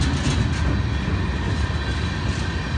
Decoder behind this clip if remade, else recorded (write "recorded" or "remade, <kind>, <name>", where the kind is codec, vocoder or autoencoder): recorded